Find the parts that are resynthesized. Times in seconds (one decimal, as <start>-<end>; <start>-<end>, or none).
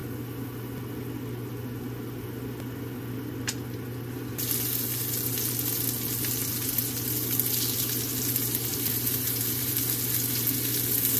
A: 8.7-9.7